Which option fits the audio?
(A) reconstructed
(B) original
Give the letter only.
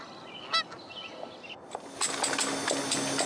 B